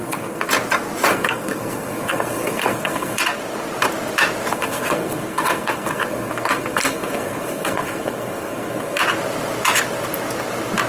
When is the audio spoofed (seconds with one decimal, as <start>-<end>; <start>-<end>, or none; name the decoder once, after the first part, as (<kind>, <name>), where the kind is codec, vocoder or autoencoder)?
0.0-0.5 (codec, SNAC); 1.1-3.2; 4.5-9.0